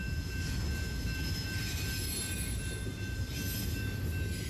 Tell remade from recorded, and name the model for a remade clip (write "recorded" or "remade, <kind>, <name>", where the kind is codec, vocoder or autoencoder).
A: recorded